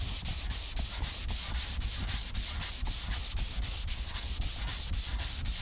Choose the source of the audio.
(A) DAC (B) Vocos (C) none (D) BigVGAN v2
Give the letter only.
C